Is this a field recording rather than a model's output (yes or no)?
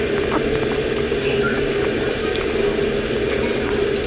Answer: yes